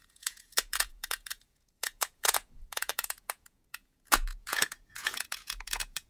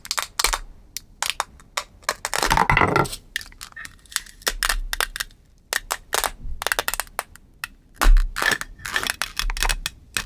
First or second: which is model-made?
first